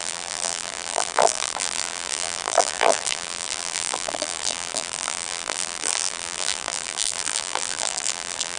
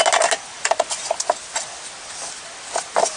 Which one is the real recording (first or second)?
second